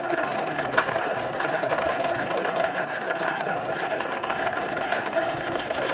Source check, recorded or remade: remade